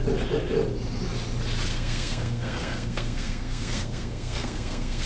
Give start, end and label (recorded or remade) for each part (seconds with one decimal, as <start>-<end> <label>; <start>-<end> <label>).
0.0-1.7 recorded; 1.7-5.1 remade